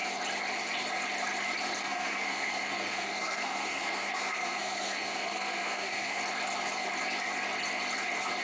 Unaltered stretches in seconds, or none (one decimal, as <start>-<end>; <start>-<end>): 0.0-1.8; 6.2-8.4